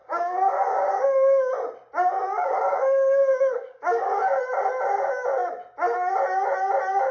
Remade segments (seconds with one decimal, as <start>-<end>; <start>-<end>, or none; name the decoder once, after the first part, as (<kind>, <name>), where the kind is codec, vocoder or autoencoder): 0.0-1.5 (codec, DAC); 2.4-4.4